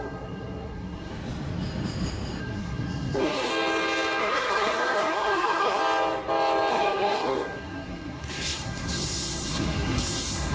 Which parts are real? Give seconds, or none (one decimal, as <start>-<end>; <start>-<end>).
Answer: 1.1-2.4; 3.5-4.2; 5.8-6.7